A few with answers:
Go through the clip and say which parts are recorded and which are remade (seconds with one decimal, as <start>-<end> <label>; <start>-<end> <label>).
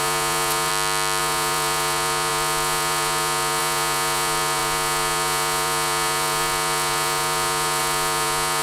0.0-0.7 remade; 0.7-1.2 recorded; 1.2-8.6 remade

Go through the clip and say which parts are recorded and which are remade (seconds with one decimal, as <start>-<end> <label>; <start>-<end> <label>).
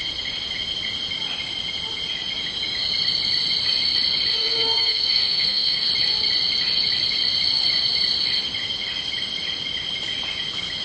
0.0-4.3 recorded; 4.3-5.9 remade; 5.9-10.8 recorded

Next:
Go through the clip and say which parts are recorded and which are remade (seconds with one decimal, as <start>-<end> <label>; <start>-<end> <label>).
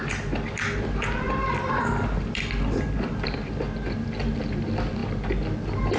0.0-3.6 remade; 3.6-6.0 recorded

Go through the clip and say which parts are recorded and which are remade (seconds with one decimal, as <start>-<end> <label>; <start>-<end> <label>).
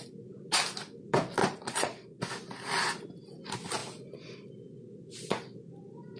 0.0-1.4 recorded; 1.4-2.2 remade; 2.2-6.2 recorded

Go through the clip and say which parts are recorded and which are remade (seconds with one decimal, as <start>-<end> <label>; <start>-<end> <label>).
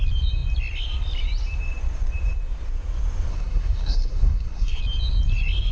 0.0-3.3 recorded; 3.3-4.8 remade; 4.8-5.7 recorded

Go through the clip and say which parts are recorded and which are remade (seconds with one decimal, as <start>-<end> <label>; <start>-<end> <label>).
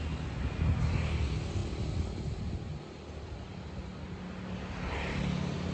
0.0-5.7 recorded